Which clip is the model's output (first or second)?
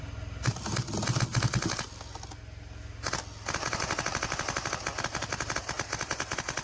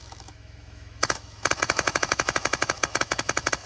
second